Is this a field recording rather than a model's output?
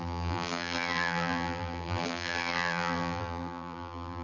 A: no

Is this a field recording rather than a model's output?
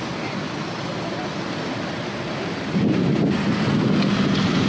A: yes